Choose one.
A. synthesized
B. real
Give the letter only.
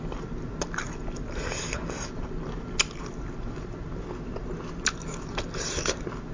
B